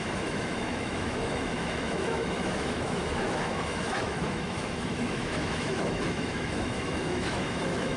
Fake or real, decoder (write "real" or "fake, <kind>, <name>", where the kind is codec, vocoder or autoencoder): fake, autoencoder, DAC-VAE